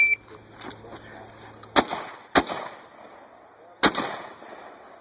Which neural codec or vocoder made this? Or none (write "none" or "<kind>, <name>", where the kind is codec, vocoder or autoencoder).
none